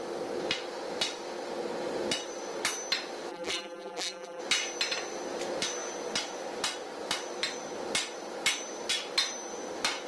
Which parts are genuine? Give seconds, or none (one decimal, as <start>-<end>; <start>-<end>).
0.0-3.3; 4.4-10.1

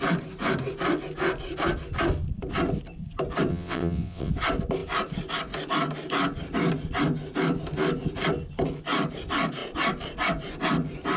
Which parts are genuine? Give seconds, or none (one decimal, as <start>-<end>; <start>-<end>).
0.0-3.5; 4.3-11.2

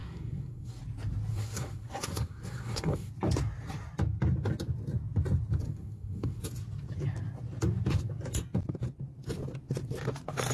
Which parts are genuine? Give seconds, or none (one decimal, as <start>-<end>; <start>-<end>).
0.8-1.3; 3.1-5.6; 6.5-10.5

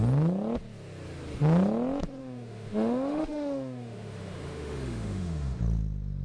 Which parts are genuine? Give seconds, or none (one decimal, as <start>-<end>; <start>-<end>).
0.0-2.2; 5.6-6.2

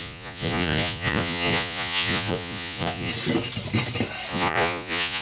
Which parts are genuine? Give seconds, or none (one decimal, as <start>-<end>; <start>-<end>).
3.1-4.3

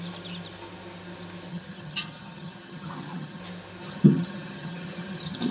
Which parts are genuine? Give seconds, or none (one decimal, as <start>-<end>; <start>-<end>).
0.0-1.5; 3.4-3.8

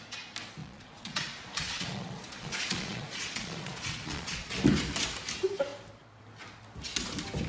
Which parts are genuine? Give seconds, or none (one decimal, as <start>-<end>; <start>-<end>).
0.0-0.6; 4.5-7.5